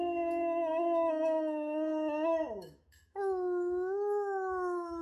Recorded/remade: remade